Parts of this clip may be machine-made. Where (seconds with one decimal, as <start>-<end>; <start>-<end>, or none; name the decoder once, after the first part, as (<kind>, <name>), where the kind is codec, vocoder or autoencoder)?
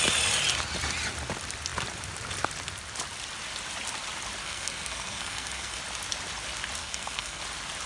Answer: 4.4-5.8 (codec, SNAC); 6.8-7.4